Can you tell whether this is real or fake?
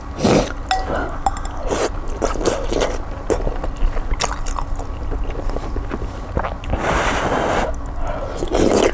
real